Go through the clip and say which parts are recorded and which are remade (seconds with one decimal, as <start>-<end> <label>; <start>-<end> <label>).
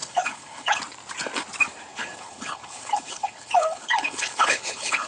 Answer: 0.0-0.8 remade; 0.8-1.9 recorded; 1.9-5.1 remade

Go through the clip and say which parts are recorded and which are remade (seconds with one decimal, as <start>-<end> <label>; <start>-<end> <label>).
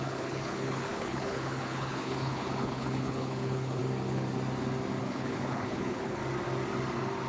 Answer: 0.0-3.8 remade; 3.8-5.0 recorded; 5.0-6.2 remade; 6.2-7.3 recorded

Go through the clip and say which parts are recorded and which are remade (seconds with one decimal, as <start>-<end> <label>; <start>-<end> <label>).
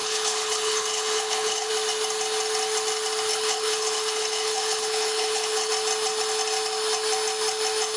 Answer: 0.0-1.7 remade; 1.7-3.3 recorded; 3.3-5.7 remade; 5.7-8.0 recorded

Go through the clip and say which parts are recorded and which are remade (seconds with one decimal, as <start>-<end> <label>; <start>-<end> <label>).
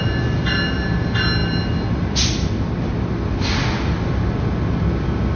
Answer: 0.0-5.3 recorded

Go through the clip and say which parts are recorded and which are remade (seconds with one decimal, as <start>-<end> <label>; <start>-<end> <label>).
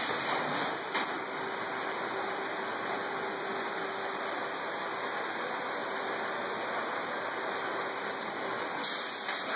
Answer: 0.0-9.6 recorded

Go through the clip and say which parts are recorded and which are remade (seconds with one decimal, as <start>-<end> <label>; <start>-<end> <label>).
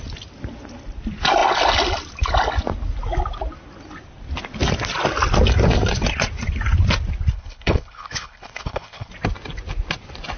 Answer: 0.0-7.3 recorded; 7.3-9.1 remade; 9.1-10.4 recorded